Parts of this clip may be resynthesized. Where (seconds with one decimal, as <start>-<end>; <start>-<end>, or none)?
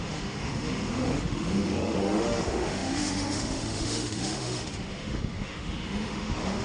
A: 0.0-6.6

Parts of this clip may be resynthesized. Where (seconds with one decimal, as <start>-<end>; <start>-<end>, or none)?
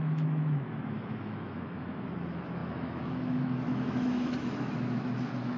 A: 0.0-5.6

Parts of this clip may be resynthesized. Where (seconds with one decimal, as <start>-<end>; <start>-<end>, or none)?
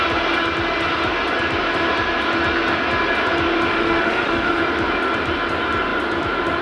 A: 3.7-4.6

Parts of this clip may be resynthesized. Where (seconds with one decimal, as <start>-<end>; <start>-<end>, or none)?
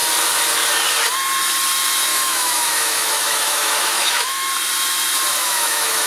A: 2.1-4.5; 5.4-6.1